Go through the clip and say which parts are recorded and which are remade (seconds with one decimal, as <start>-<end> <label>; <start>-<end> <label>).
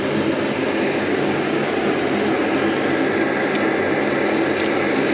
0.0-0.6 recorded; 0.6-1.8 remade; 1.8-5.1 recorded